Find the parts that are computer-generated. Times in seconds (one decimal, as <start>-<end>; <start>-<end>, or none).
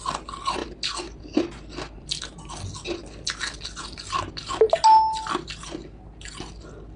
none